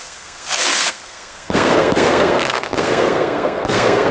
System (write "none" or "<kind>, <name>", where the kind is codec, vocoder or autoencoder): codec, SNAC